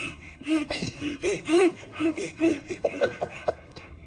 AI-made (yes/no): yes